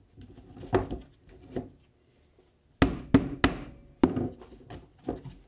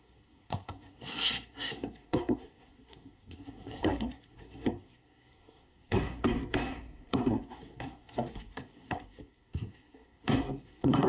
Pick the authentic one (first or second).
first